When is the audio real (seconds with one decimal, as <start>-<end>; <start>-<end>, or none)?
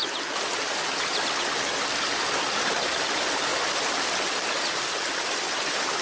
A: 0.0-6.0